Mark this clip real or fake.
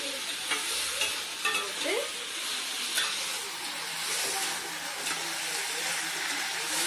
real